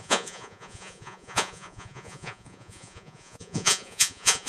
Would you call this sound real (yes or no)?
no